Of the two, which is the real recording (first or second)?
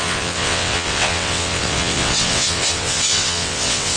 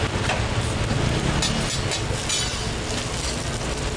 second